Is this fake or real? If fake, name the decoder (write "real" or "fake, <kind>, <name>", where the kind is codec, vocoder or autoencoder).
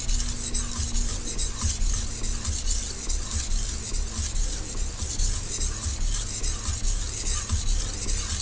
real